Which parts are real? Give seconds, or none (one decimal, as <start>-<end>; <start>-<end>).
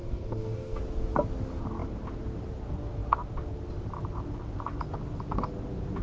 0.8-6.0